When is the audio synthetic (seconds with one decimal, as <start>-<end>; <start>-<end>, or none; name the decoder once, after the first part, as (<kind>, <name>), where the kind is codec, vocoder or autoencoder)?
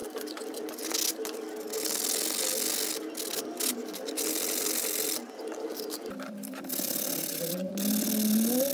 0.0-0.8 (vocoder, BigVGAN v2); 3.3-7.7